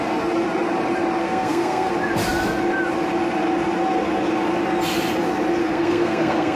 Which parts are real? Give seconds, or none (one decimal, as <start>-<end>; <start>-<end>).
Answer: 0.0-1.2; 1.9-5.6